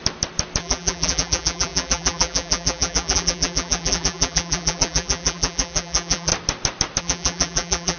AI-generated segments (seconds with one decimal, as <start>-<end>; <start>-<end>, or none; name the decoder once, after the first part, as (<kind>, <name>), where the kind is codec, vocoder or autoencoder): 0.6-6.3 (vocoder, BigVGAN v2); 7.0-8.0